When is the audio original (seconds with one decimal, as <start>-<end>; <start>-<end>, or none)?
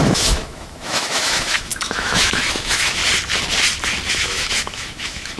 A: 3.0-4.1